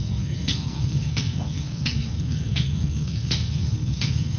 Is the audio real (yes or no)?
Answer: no